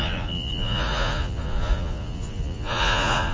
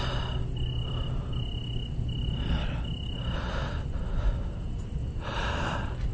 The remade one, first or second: first